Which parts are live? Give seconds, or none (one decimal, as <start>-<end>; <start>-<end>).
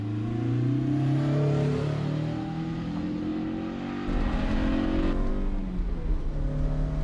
0.0-7.0